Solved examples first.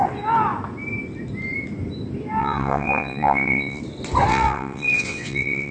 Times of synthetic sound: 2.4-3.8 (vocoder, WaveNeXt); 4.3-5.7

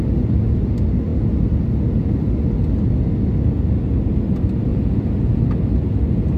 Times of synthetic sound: 4.7-5.4 (vocoder, Vocos)

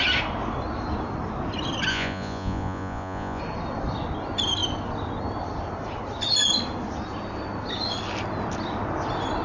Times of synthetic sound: 1.9-3.4 (vocoder, Vocos)

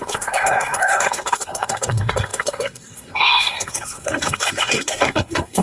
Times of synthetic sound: 0.0-5.6 (codec, SNAC)

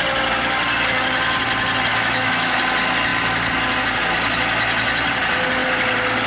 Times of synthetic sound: 1.9-2.6 (autoencoder, DAC-VAE)